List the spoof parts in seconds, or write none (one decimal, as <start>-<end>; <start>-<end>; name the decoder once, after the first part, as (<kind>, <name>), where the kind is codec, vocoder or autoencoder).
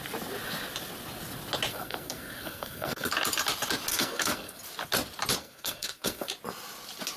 1.7-3.1 (codec, SNAC); 3.9-4.6; 5.4-6.3